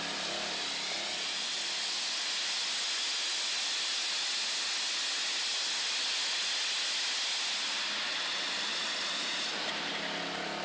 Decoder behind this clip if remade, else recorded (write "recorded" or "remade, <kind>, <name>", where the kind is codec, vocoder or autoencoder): recorded